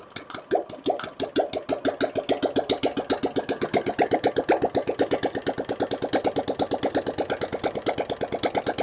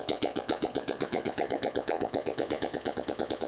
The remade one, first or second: second